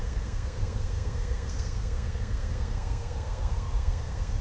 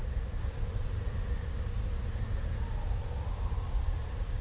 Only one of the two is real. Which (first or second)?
second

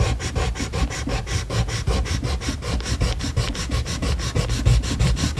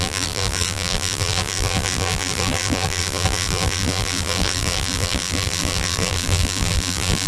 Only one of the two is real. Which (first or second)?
first